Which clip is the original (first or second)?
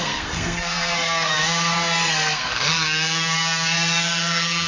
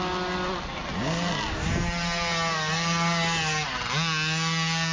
second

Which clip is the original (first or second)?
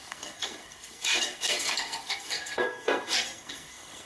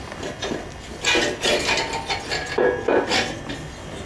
second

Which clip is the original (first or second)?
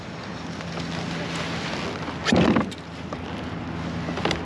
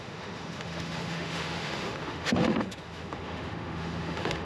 first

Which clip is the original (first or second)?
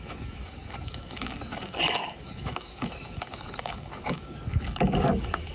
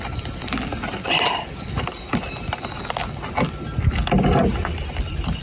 second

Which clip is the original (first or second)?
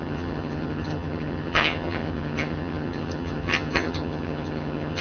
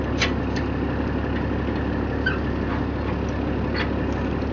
second